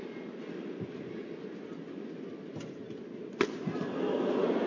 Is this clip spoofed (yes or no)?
no